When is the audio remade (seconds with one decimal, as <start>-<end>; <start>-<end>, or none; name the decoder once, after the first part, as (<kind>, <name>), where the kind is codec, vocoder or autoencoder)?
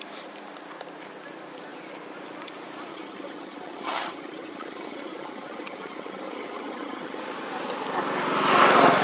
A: 2.9-7.2 (vocoder, HiFi-GAN)